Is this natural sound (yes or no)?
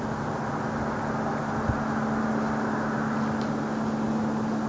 yes